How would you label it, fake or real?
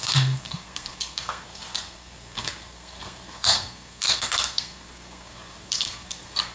fake